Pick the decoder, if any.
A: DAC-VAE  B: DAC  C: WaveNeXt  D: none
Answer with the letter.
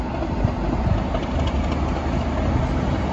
D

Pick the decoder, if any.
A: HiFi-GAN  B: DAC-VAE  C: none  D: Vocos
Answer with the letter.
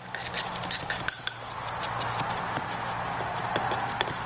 C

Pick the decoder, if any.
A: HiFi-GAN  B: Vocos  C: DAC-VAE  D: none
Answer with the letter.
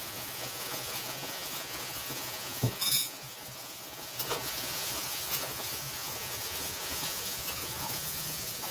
B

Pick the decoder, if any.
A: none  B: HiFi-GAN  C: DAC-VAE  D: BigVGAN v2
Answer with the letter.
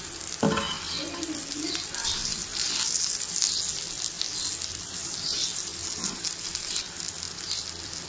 A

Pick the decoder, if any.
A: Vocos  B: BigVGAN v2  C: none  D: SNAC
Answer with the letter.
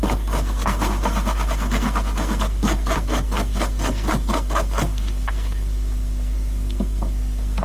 D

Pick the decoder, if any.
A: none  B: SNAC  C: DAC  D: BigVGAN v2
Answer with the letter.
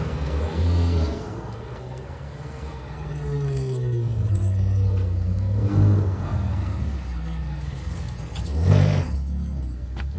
B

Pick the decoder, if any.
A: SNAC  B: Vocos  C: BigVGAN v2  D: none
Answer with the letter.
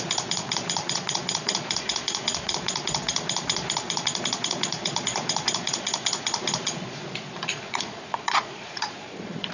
B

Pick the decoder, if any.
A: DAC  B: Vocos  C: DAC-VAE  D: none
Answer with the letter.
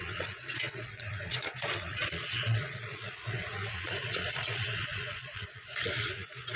B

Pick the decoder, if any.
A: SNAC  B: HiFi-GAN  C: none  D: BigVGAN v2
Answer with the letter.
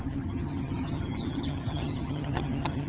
B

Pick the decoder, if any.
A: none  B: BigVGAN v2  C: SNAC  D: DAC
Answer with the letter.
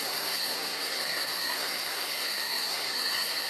C